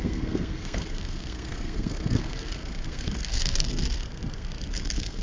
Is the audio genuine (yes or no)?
no